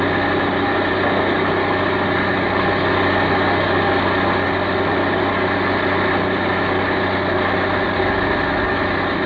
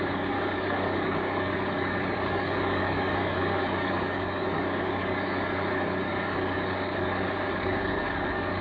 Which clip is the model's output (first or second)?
second